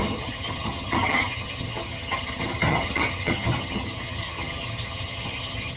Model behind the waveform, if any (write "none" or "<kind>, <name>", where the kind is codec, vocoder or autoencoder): vocoder, HiFi-GAN